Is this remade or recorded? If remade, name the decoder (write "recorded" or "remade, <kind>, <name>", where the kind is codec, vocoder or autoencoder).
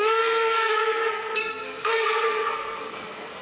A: remade, codec, SNAC